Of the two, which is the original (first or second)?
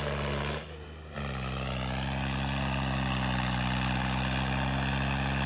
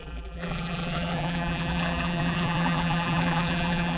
first